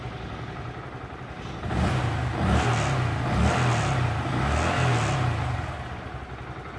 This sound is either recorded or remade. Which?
recorded